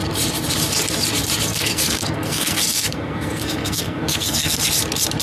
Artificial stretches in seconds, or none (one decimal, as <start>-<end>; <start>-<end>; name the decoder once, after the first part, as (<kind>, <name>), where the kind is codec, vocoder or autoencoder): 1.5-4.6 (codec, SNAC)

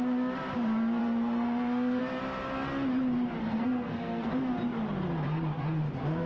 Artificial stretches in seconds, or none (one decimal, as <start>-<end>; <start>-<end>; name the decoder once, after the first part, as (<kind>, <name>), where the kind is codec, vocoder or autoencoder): 1.0-2.0 (codec, SNAC); 3.4-4.3

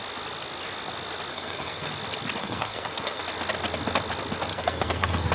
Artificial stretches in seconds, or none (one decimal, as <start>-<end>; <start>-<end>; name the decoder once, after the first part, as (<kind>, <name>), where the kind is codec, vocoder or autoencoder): 1.3-1.9 (codec, SNAC); 2.4-3.2; 4.5-5.3

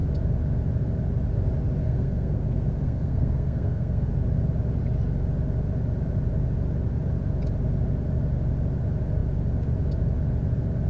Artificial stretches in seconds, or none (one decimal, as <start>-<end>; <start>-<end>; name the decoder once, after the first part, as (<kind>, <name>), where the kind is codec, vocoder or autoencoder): 1.8-4.1 (codec, SNAC)

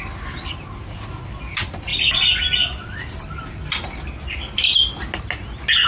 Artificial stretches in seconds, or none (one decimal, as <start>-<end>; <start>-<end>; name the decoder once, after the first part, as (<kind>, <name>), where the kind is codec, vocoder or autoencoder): none